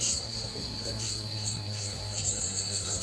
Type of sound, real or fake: fake